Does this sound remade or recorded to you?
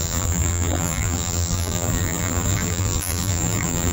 remade